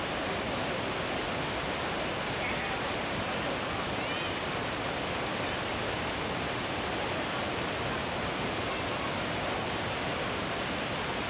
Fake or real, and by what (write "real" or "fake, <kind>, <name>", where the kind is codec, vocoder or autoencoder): real